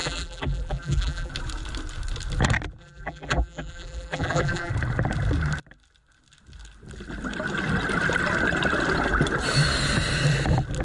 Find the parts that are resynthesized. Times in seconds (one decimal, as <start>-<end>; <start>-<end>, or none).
0.0-1.3; 2.8-4.7